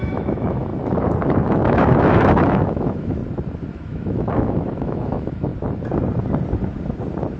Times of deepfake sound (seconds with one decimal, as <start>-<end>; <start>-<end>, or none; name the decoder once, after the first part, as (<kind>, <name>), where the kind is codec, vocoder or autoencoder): 0.0-0.7 (autoencoder, DAC-VAE); 1.2-3.2; 3.7-5.5